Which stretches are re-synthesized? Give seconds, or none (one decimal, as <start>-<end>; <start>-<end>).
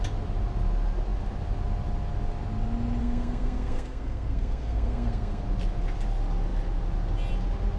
3.0-5.4